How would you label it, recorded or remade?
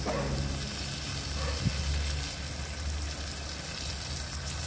recorded